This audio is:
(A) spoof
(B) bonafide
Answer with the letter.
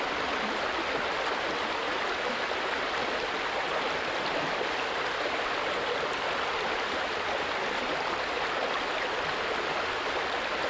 B